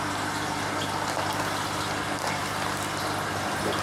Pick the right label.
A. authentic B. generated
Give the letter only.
A